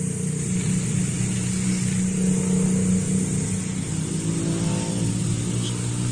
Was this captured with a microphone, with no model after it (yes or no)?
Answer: yes